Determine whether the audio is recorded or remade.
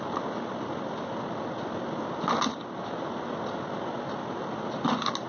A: recorded